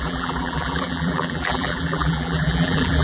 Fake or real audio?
fake